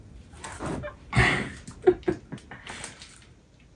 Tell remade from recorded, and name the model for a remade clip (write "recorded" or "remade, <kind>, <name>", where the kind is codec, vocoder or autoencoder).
recorded